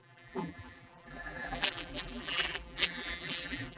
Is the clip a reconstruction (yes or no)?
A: yes